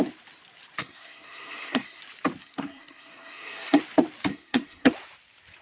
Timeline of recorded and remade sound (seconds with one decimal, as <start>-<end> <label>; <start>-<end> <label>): 0.0-0.8 recorded; 0.8-2.0 remade; 2.0-2.4 recorded; 2.4-3.8 remade; 3.8-4.3 recorded; 4.3-4.9 remade; 4.9-5.6 recorded